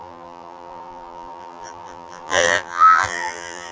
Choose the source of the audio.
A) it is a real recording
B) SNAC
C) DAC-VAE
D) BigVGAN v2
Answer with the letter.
D